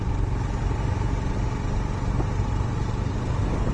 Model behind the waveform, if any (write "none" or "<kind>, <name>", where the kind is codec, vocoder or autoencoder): none